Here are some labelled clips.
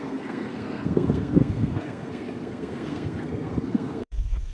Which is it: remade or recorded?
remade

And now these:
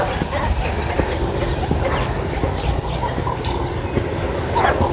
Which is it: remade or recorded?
recorded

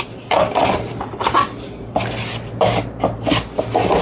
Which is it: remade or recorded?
recorded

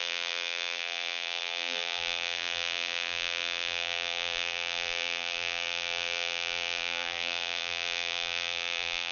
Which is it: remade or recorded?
remade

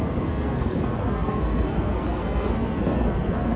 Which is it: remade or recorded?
remade